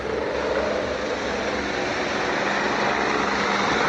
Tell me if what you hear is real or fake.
real